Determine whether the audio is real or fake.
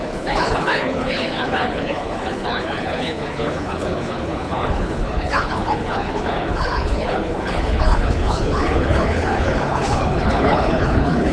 fake